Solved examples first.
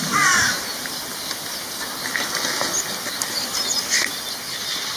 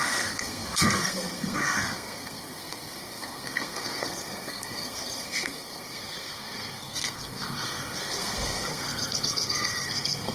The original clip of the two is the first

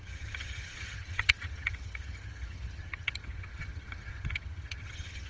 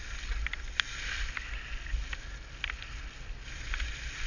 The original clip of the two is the second